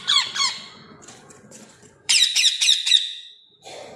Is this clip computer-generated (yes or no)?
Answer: yes